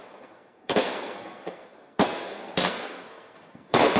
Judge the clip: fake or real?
fake